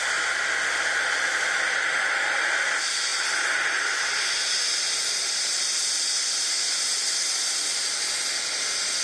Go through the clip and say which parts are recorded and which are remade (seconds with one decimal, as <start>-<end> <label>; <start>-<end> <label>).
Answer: 0.0-3.1 recorded; 3.1-5.8 remade; 5.8-9.0 recorded